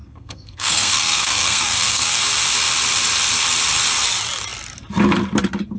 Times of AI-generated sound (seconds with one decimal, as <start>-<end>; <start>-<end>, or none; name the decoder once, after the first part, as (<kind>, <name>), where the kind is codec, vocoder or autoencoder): 0.0-2.2 (codec, SNAC)